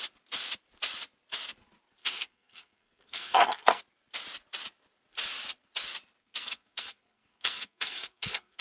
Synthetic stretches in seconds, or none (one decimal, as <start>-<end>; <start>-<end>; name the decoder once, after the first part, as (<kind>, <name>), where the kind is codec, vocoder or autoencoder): 2.0-3.8 (codec, SNAC); 6.2-8.6